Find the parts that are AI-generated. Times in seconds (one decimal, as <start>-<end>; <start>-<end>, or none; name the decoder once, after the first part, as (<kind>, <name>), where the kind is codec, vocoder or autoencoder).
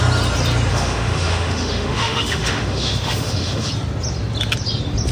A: 0.7-3.7 (autoencoder, DAC-VAE)